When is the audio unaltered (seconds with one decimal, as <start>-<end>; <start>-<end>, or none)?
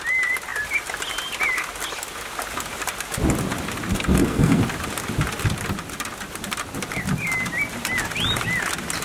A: 0.0-3.9; 4.6-9.0